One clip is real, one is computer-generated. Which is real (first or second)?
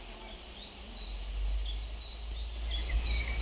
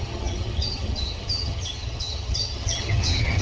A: first